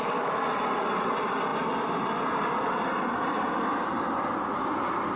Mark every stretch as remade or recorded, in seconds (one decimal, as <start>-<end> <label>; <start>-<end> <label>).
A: 0.0-5.2 recorded